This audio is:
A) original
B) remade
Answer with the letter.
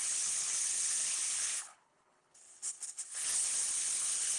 B